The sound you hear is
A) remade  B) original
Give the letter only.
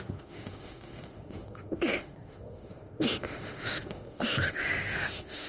A